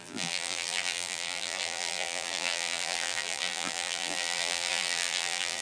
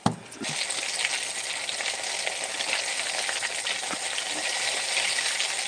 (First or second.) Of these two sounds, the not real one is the first